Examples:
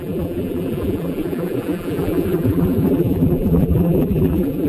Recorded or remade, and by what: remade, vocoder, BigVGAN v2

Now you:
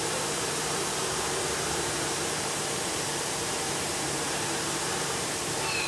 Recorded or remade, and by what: remade, vocoder, BigVGAN v2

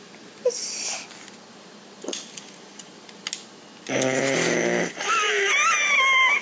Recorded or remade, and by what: recorded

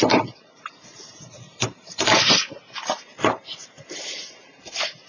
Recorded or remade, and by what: remade, vocoder, BigVGAN v2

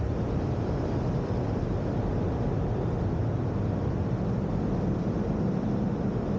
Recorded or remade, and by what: recorded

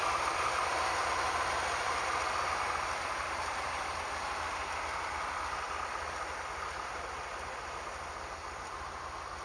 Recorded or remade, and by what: recorded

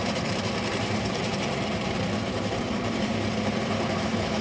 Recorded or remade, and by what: remade, vocoder, BigVGAN v2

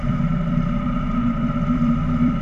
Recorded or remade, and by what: remade, vocoder, BigVGAN v2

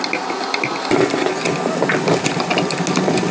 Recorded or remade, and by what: recorded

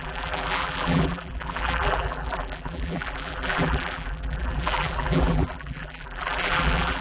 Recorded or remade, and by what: remade, vocoder, BigVGAN v2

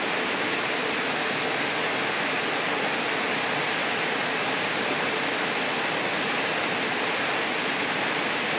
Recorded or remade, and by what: recorded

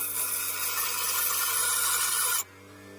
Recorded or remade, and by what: recorded